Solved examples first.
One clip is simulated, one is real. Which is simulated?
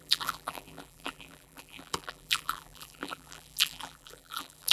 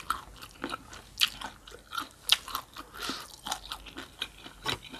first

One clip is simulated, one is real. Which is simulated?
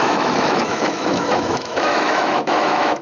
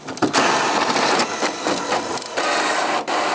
first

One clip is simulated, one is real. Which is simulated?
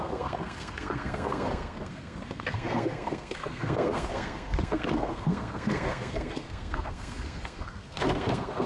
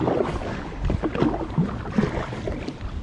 first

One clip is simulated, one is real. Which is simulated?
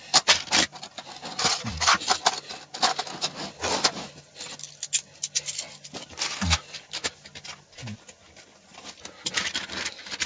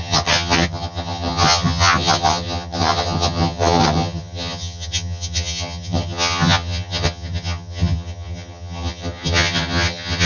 second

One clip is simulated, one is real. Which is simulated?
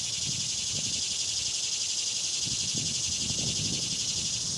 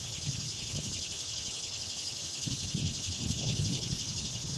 second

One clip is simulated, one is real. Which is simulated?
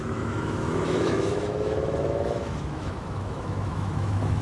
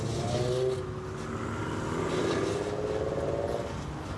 first